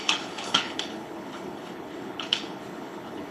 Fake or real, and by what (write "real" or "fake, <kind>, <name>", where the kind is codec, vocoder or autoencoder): fake, codec, HILCodec